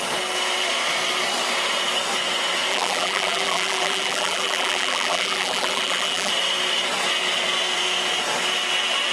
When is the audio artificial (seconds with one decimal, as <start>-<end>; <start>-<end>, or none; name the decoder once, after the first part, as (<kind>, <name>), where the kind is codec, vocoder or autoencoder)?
2.7-6.3 (vocoder, BigVGAN v2)